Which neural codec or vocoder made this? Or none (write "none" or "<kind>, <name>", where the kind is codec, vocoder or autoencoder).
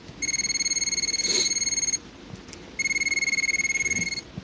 none